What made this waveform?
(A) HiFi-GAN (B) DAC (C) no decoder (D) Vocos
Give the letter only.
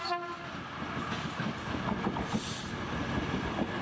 C